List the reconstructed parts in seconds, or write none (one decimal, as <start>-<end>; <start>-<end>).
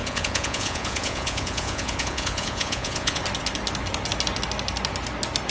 0.0-3.2